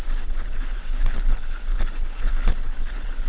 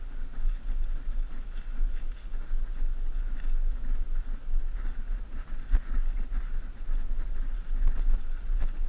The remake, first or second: first